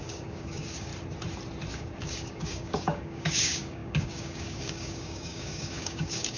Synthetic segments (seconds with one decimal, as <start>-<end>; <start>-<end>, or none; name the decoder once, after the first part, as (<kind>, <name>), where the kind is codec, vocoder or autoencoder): 0.0-0.9 (codec, DAC); 1.7-6.4